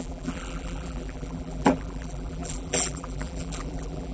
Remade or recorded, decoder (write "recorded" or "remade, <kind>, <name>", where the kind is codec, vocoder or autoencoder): remade, vocoder, BigVGAN v2